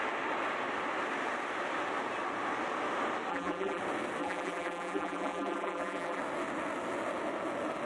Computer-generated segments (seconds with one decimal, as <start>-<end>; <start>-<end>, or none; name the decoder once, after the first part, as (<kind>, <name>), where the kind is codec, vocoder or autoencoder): 3.3-3.8 (vocoder, BigVGAN v2); 4.2-6.2